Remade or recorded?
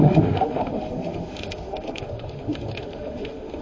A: remade